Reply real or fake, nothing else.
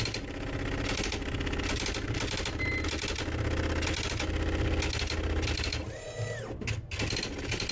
real